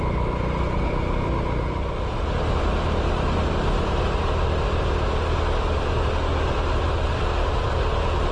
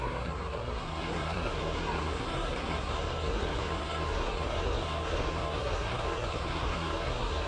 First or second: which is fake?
second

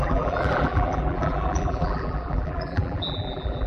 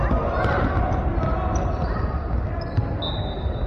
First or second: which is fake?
first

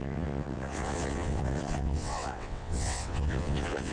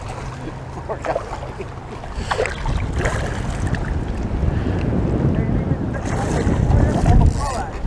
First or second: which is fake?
first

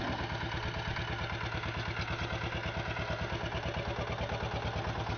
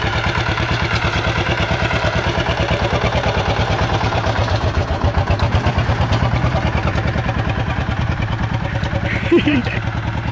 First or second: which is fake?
second